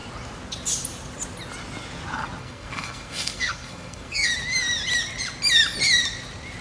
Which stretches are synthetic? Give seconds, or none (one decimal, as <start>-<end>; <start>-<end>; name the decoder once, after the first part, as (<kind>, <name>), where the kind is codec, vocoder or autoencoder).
2.4-4.3 (codec, SNAC)